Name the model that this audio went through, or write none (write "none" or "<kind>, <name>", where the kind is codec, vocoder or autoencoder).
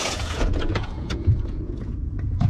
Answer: vocoder, Vocos